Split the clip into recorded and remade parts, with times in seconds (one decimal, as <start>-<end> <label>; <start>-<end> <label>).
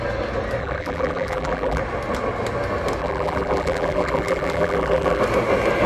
0.0-0.6 recorded; 0.6-1.8 remade; 1.8-3.0 recorded; 3.0-5.2 remade; 5.2-5.9 recorded